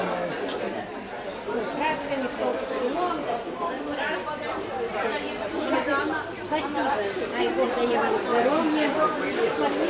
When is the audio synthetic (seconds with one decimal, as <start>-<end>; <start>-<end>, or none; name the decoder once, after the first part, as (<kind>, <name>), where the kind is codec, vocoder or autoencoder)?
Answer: none